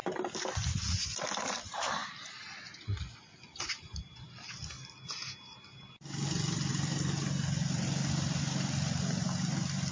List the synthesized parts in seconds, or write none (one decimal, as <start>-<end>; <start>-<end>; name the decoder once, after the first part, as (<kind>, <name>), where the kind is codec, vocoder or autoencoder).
none